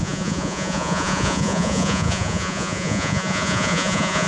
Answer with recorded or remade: remade